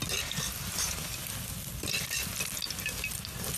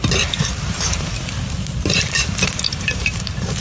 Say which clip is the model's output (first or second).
second